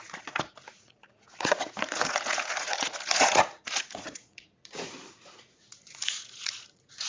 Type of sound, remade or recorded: remade